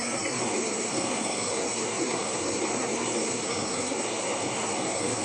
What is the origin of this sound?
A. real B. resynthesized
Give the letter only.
B